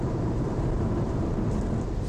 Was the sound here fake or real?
fake